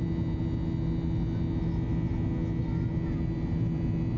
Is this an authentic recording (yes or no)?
yes